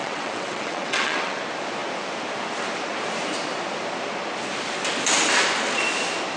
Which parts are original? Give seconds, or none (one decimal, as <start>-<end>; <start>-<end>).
1.4-6.4